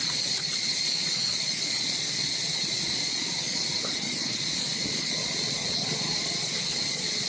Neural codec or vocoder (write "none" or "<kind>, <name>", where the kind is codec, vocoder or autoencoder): vocoder, Vocos